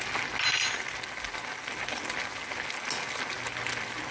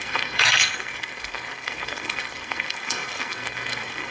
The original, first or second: first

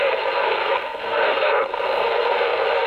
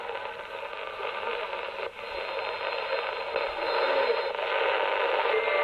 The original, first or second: second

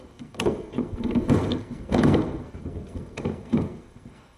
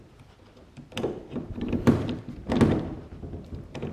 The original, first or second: second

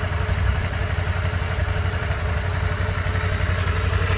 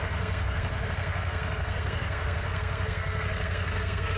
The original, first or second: first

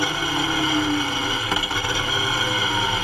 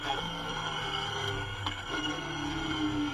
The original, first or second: first